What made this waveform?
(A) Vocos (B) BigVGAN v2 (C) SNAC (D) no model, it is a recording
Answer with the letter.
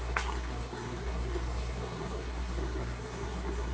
C